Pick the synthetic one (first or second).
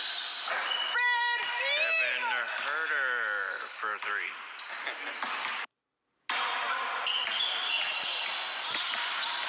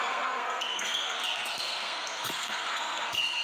second